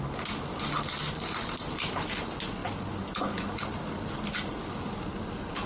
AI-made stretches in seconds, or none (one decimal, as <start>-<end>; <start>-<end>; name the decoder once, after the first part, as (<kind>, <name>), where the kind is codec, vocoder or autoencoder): none